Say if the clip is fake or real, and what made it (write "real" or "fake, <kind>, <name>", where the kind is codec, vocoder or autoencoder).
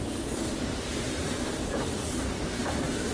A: real